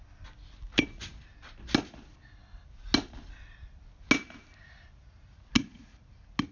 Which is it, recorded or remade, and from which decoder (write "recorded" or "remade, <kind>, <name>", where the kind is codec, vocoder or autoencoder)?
recorded